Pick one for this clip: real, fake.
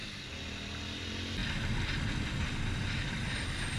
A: real